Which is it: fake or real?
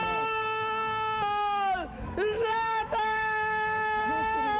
fake